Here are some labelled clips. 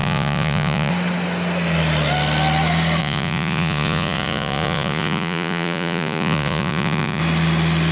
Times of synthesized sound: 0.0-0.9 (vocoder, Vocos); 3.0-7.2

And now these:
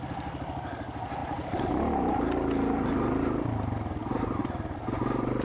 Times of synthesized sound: none